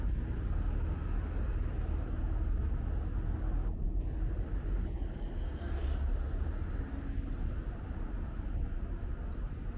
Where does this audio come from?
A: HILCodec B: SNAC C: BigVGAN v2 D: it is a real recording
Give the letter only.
D